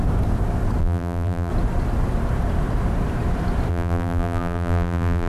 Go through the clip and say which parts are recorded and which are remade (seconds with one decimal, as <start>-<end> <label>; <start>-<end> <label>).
0.0-0.8 recorded; 0.8-1.5 remade; 1.5-3.7 recorded; 3.7-5.3 remade